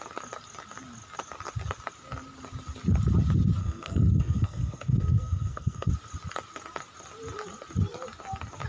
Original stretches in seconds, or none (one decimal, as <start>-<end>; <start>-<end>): 0.0-3.6; 5.9-8.7